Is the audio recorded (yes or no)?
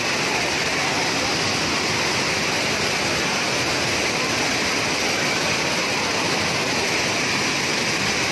yes